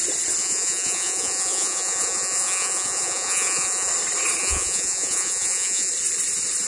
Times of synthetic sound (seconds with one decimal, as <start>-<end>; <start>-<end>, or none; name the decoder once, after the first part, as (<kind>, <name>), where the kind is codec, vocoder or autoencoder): 0.4-3.9 (vocoder, Vocos); 4.4-5.9